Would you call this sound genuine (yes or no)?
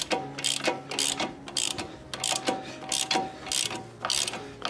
yes